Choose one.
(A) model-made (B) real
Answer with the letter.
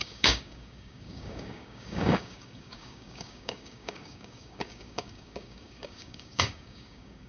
A